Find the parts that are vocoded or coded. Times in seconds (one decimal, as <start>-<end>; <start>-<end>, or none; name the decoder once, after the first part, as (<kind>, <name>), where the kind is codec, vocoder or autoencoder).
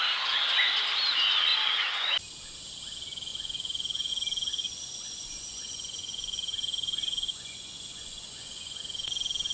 1.5-2.1 (vocoder, Vocos); 3.3-4.1; 4.5-8.8